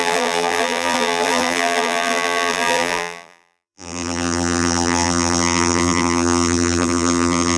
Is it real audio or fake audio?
fake